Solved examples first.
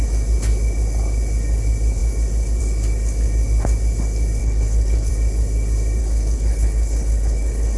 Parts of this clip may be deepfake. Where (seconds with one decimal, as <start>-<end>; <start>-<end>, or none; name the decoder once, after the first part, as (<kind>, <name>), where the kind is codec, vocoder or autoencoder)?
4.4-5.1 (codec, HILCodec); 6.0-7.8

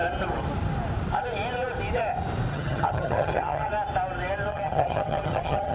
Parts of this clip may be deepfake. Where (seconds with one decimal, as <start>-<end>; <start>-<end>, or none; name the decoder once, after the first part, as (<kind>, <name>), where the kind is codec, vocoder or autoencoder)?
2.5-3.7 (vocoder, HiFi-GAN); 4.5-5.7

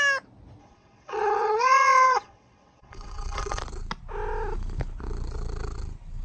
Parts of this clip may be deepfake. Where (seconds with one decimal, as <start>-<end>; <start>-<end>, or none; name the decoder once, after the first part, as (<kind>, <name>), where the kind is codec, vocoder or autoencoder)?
0.6-3.6 (vocoder, WaveNeXt)

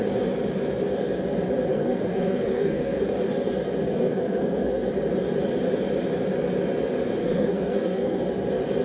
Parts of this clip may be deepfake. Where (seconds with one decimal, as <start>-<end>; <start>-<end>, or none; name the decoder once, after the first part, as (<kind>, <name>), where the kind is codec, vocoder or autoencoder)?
1.7-3.1 (codec, SNAC); 3.8-4.9; 7.2-8.2

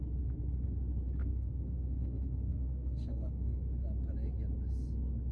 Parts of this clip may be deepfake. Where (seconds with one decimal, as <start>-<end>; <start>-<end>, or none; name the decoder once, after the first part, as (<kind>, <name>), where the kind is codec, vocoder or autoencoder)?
1.2-3.6 (codec, SNAC)